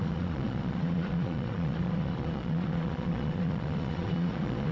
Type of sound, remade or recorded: remade